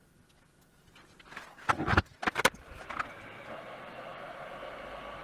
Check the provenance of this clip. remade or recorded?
recorded